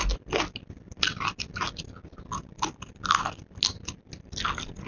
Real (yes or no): yes